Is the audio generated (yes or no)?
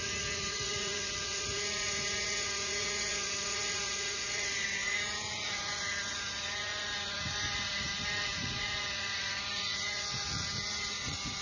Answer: yes